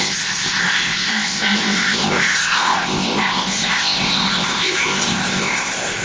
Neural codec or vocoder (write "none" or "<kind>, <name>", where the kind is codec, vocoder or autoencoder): codec, ZipCodec